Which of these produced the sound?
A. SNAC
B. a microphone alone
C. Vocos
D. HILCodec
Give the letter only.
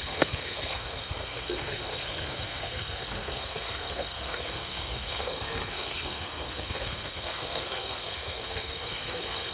A